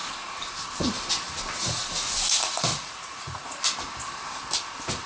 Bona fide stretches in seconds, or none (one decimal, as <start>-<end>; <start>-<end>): 0.0-2.7; 3.6-5.1